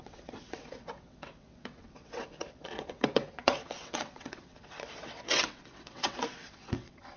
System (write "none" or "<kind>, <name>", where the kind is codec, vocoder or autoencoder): vocoder, WaveNeXt